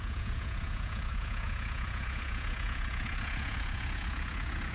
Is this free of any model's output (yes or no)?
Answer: no